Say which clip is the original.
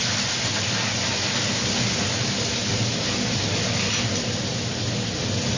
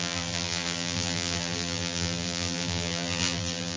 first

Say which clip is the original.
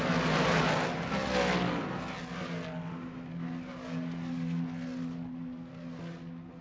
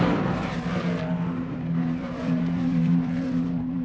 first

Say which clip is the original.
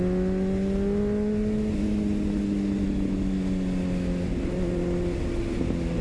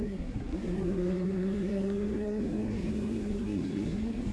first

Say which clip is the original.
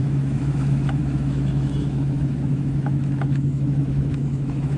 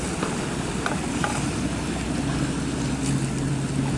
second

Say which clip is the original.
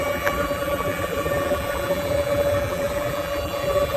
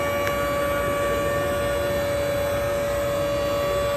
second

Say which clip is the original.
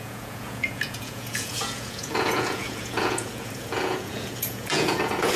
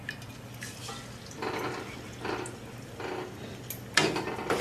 second